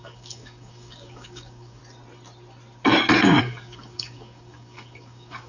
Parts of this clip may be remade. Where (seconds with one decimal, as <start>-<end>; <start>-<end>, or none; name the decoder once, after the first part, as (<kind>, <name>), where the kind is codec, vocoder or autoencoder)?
0.0-1.8 (codec, DAC); 3.4-5.5